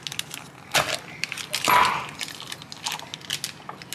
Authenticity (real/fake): real